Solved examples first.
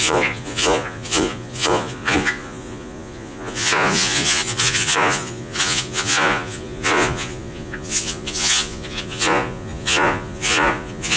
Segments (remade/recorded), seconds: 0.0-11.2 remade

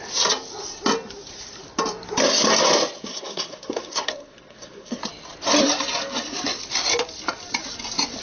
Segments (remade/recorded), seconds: 0.0-3.1 recorded; 3.1-5.0 remade; 5.0-8.2 recorded

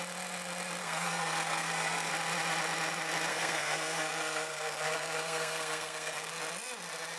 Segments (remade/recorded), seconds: 0.0-0.8 recorded; 0.8-2.1 remade; 2.1-3.3 recorded; 3.3-6.3 remade; 6.3-7.2 recorded

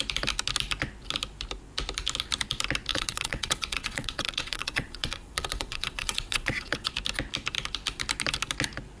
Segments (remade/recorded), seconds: 0.0-2.9 recorded; 2.9-6.9 remade; 6.9-9.0 recorded

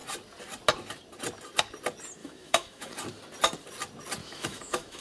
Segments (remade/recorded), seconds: 0.0-2.2 recorded; 2.2-2.9 remade; 2.9-4.2 recorded; 4.2-5.0 remade